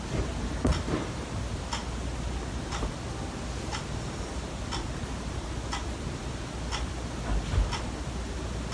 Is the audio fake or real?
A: real